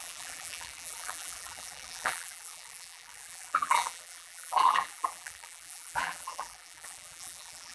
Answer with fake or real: fake